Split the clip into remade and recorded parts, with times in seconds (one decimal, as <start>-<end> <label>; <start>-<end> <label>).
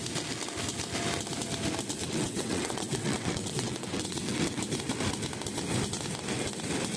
0.0-2.0 recorded; 2.0-4.6 remade; 4.6-7.0 recorded